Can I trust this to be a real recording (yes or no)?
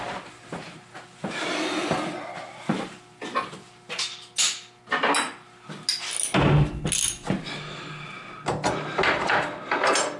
yes